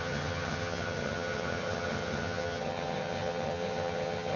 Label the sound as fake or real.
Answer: fake